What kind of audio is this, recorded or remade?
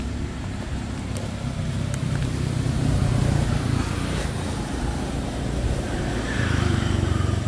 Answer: remade